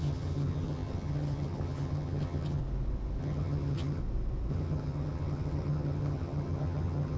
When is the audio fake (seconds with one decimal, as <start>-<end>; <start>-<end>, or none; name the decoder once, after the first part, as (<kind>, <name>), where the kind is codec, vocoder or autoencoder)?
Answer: 0.0-2.6 (vocoder, HiFi-GAN); 3.2-4.0; 4.5-7.2